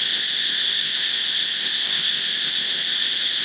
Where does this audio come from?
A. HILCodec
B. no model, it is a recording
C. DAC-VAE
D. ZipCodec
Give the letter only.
D